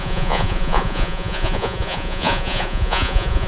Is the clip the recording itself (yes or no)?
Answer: no